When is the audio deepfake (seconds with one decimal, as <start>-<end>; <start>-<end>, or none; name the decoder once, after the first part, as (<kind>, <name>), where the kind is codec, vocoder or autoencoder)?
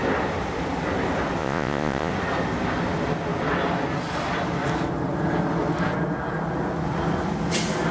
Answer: 1.4-2.1 (vocoder, Vocos)